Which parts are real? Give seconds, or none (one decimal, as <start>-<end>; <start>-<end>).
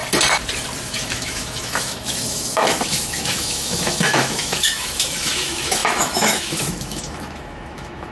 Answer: 0.0-0.8